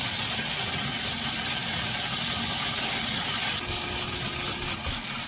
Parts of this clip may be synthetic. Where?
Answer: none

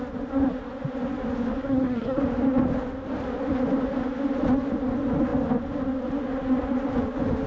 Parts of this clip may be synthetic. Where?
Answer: 1.6-2.2 (codec, SNAC)

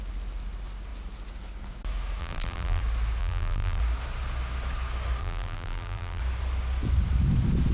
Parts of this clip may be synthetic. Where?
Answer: 2.2-2.8 (vocoder, BigVGAN v2); 3.2-3.8; 5.2-6.2

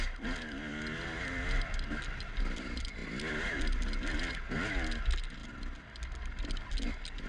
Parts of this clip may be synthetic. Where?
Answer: none

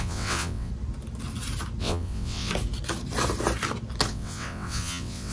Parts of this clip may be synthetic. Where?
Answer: 0.0-0.7 (vocoder, WaveNeXt); 1.8-2.5; 4.1-5.3

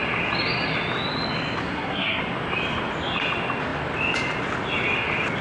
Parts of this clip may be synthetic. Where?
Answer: 1.6-2.2 (codec, SNAC)

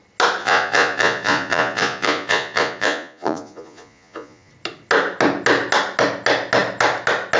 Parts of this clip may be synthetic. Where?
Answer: 0.4-4.5 (vocoder, Vocos)

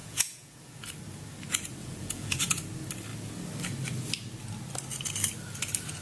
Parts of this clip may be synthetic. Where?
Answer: 0.0-0.9 (vocoder, Vocos); 1.8-2.5